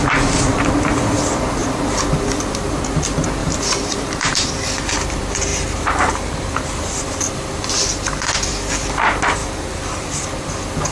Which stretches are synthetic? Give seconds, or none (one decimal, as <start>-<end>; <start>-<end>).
1.6-2.8; 3.4-4.5; 5.5-6.1; 9.4-10.3